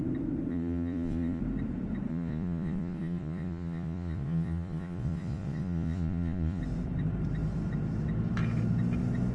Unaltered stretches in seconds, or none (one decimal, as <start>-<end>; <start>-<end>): 0.0-0.5; 1.4-2.1; 6.6-9.3